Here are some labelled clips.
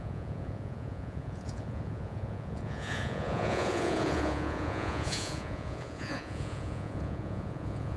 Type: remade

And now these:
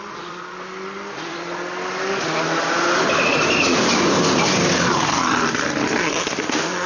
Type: recorded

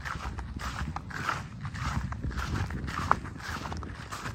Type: recorded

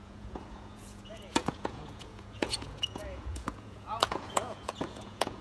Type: remade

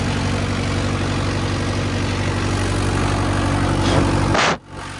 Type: recorded